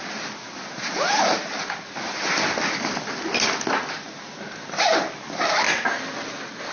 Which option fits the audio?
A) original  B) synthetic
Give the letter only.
A